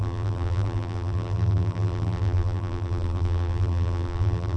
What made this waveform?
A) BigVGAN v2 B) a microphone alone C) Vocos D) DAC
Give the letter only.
A